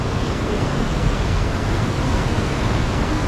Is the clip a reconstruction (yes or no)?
yes